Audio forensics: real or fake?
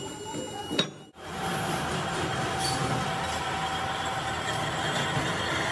real